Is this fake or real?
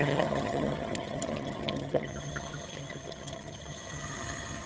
fake